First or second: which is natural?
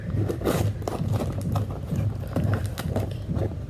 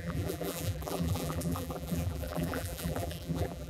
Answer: first